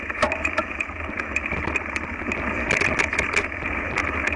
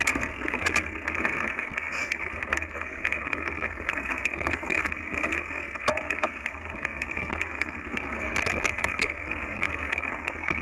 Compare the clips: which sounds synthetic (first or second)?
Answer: second